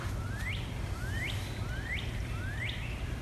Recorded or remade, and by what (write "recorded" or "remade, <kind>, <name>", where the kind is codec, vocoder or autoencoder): recorded